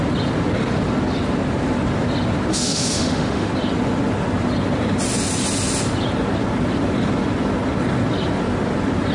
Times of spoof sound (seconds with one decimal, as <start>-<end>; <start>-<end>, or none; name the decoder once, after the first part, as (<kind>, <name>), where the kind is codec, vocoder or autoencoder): 2.5-3.5 (autoencoder, DAC-VAE)